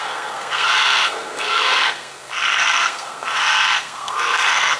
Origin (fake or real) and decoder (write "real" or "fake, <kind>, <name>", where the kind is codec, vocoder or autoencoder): fake, codec, SNAC